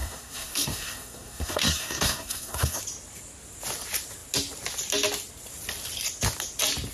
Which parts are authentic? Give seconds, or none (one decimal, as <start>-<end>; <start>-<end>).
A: 2.8-6.9